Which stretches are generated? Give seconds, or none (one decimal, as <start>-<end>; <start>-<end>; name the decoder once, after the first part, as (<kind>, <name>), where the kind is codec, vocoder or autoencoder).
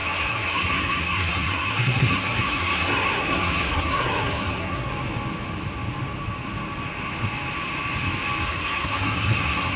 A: 0.0-4.9 (codec, SNAC); 8.5-9.8